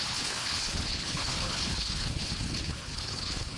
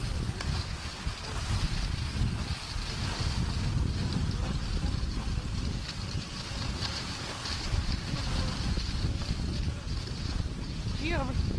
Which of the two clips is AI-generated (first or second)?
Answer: first